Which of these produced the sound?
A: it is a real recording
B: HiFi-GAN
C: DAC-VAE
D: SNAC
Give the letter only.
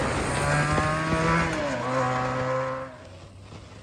A